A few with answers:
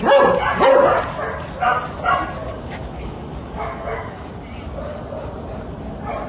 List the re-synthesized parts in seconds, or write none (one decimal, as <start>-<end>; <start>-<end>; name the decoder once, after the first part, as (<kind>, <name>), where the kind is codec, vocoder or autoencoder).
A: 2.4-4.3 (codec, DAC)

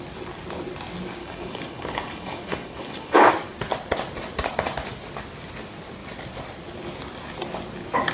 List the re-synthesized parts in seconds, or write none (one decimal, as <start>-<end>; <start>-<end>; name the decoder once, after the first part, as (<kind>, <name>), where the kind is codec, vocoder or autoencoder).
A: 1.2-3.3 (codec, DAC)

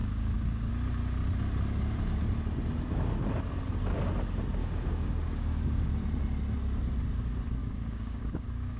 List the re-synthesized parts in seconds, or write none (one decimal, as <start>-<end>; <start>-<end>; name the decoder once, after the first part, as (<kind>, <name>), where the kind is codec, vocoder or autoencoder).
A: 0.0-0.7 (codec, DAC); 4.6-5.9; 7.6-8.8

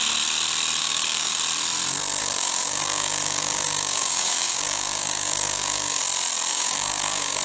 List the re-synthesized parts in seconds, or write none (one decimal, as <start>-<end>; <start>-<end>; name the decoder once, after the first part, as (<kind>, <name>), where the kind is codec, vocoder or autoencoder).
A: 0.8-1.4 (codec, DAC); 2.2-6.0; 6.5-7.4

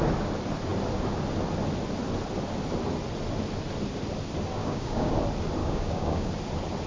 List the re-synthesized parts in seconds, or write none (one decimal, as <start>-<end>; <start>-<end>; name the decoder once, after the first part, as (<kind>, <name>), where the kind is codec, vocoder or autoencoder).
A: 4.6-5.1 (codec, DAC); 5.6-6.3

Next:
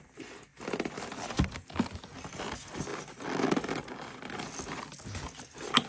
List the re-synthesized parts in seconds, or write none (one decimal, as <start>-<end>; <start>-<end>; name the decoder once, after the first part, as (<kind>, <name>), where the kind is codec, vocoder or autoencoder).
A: none

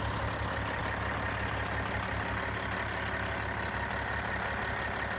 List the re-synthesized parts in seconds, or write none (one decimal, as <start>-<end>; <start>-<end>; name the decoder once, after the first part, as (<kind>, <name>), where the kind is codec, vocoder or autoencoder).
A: none